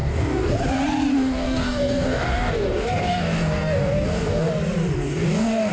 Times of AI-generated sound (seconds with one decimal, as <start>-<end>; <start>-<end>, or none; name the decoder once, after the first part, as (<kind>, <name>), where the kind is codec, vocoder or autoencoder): 0.0-0.5 (codec, DAC); 1.1-4.5; 5.0-5.7